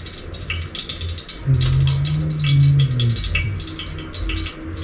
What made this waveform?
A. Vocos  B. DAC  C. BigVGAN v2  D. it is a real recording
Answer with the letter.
D